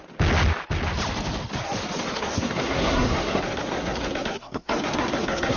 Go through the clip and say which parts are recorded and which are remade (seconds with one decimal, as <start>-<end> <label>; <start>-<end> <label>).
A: 0.0-2.1 recorded; 2.1-5.6 remade